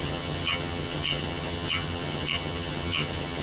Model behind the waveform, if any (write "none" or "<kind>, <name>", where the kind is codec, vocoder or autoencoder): vocoder, HiFi-GAN